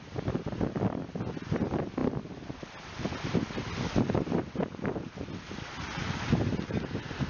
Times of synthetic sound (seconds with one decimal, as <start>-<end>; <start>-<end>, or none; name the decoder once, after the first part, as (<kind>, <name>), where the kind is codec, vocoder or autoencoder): none